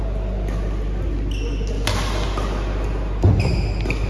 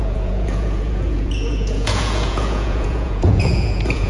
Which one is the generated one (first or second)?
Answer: second